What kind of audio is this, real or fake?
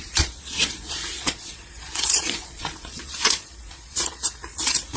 fake